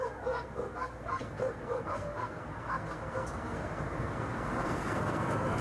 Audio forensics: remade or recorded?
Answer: remade